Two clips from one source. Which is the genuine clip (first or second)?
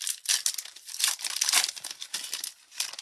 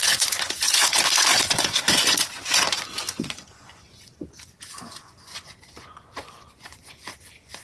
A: first